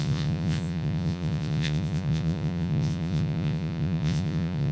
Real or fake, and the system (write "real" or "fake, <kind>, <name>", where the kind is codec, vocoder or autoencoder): fake, vocoder, Vocos